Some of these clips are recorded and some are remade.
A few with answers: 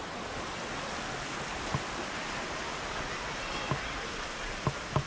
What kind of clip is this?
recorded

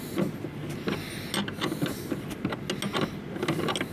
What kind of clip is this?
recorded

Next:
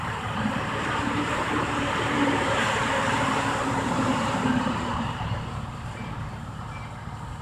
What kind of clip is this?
remade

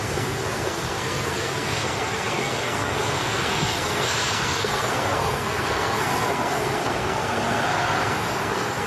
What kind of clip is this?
remade